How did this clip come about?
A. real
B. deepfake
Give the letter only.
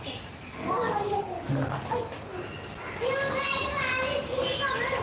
A